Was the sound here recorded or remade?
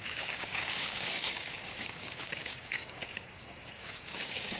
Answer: remade